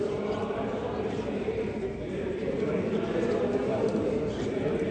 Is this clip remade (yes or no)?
yes